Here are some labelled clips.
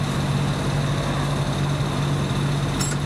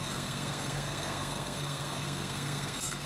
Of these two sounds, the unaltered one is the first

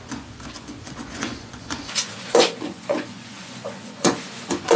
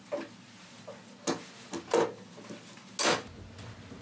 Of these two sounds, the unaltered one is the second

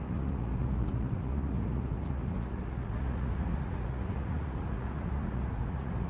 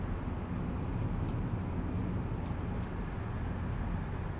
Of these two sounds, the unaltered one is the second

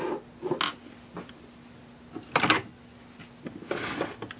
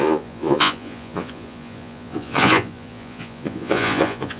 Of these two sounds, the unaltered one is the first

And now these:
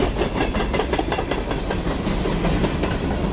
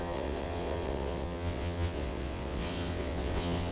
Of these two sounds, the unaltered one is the first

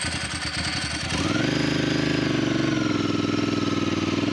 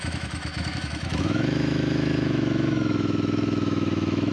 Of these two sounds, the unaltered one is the first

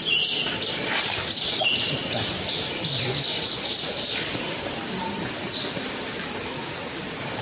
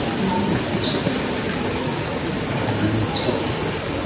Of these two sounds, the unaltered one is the second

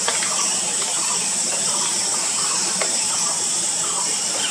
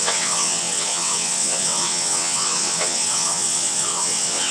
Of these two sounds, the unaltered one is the first